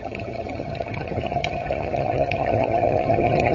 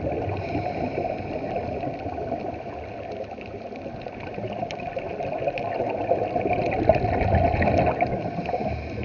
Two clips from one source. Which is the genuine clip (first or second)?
second